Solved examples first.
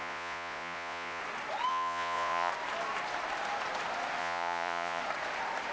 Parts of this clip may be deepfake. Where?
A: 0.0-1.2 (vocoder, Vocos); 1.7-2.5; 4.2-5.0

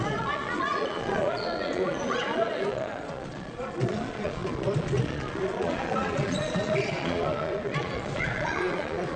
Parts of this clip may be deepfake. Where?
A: 0.0-9.2 (vocoder, Vocos)

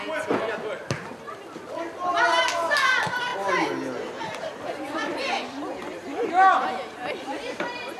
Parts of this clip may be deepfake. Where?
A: 3.3-6.3 (vocoder, BigVGAN v2)